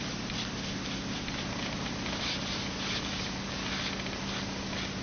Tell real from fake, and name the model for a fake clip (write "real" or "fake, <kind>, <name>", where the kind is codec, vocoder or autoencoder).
real